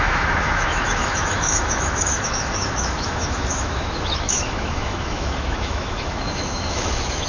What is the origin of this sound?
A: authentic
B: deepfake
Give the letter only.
B